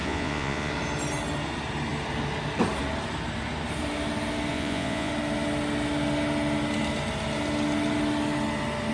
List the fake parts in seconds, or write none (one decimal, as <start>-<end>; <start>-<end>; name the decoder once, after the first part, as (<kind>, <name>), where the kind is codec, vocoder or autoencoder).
0.0-0.7 (vocoder, Vocos); 4.5-5.1